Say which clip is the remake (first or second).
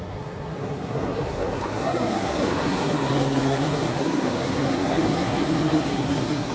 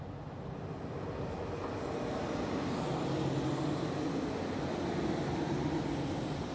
first